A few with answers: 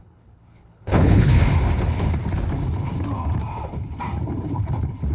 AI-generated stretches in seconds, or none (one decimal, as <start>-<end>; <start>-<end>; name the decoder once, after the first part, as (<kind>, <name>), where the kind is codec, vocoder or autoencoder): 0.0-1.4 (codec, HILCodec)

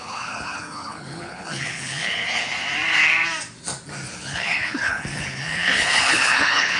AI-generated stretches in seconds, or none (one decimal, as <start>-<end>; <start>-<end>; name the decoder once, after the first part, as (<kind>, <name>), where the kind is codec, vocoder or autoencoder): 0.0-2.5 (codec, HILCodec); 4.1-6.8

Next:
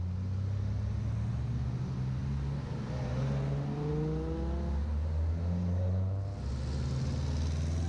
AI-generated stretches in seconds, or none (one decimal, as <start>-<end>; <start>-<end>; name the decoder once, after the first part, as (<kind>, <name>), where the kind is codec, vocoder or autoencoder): none

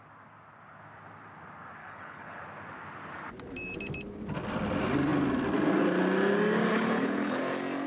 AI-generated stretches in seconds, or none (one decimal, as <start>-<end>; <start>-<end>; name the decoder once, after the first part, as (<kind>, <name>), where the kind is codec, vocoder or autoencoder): 1.8-2.4 (codec, HILCodec); 6.7-7.4

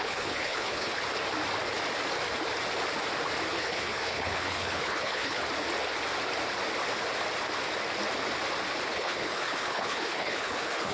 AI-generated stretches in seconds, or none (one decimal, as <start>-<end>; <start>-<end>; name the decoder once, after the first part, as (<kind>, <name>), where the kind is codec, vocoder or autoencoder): 0.0-1.0 (codec, HILCodec); 3.5-5.4; 8.9-10.9

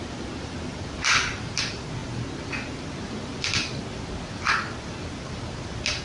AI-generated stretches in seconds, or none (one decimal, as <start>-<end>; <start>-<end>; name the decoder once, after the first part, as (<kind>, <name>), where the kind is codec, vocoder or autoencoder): none